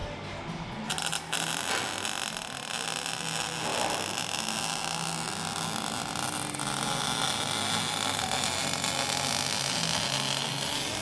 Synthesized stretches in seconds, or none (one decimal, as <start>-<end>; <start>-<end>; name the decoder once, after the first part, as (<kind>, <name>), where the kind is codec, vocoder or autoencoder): none